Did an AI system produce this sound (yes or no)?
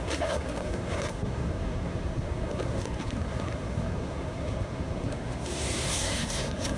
yes